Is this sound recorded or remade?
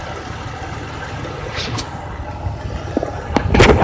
recorded